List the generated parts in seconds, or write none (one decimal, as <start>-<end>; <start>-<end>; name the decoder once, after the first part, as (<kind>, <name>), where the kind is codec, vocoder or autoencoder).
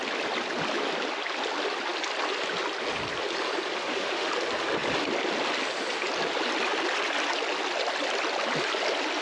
3.8-4.3 (autoencoder, DAC-VAE)